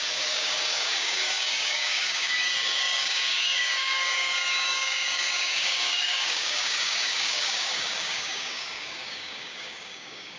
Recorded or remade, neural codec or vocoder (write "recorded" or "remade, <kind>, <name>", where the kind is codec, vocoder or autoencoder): remade, codec, DAC